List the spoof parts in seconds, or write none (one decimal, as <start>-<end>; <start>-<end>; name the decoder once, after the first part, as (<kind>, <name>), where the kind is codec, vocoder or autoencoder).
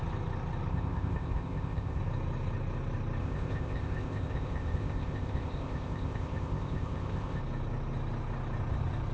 0.7-2.0 (codec, ZipCodec); 3.2-7.4